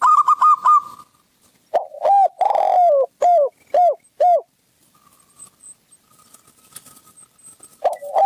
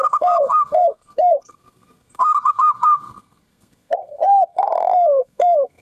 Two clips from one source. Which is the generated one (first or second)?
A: second